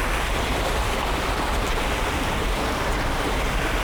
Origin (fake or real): real